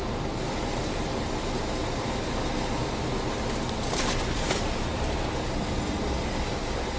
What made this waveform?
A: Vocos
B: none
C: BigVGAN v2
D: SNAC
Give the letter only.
B